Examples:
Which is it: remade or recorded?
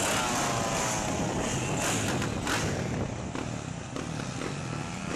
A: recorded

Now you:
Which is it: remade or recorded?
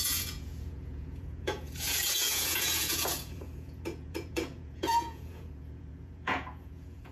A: remade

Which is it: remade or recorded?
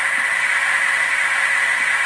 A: recorded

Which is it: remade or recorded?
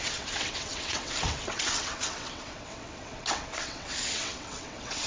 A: remade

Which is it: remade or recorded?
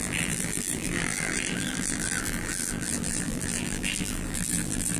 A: remade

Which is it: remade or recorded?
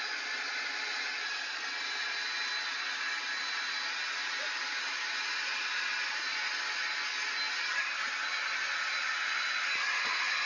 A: recorded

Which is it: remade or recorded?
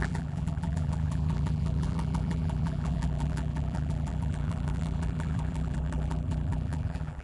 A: remade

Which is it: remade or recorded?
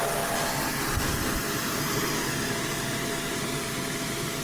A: recorded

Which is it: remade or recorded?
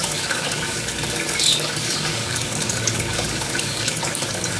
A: remade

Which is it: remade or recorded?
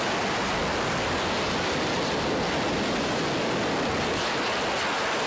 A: recorded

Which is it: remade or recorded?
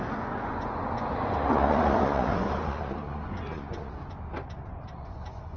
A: remade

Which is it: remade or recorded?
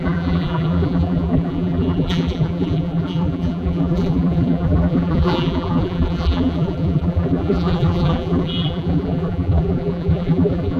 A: remade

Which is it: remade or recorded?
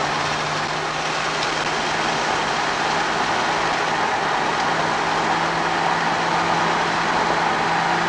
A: recorded